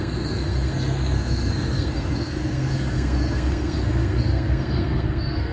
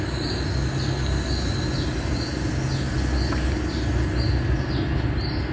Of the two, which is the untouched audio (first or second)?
second